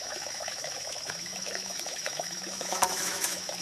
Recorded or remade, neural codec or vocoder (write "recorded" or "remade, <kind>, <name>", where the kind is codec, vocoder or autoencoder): remade, autoencoder, DAC-VAE